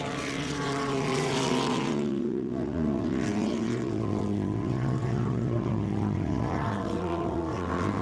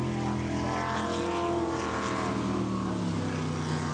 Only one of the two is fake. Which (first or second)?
first